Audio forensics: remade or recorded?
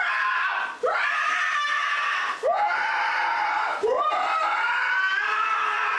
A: recorded